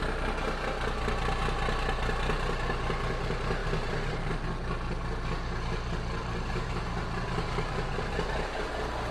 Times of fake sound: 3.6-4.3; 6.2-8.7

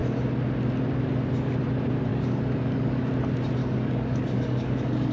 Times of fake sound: 2.1-3.0; 3.6-5.1

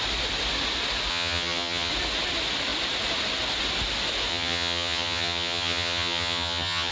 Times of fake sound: 1.1-1.9; 4.3-6.9

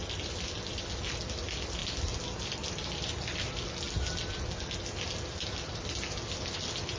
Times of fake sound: none